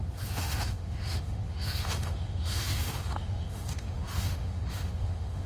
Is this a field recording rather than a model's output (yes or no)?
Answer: no